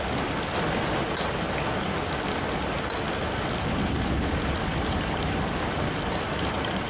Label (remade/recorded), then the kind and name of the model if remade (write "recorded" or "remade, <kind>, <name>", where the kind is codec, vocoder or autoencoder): recorded